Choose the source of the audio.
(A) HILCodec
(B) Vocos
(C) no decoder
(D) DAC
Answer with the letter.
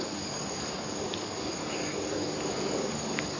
D